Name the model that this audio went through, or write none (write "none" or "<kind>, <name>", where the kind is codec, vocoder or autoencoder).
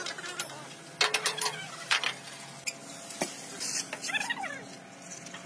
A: none